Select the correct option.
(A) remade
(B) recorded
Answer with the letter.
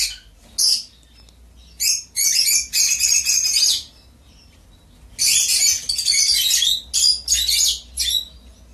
B